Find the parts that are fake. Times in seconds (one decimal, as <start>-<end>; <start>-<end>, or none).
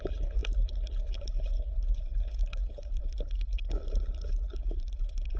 0.0-5.4